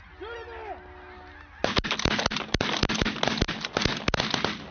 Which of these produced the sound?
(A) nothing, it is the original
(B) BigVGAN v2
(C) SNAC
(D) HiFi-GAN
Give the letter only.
A